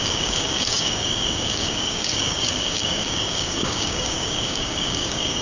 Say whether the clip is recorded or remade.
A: remade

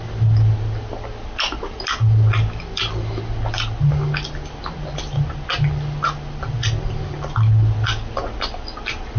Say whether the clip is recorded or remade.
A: recorded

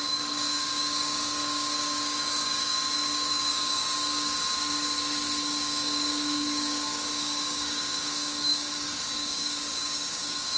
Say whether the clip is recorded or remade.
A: remade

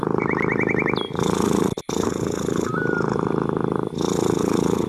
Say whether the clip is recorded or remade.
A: recorded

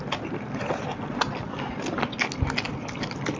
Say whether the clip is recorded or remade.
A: recorded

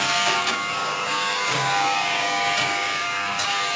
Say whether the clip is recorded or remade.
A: remade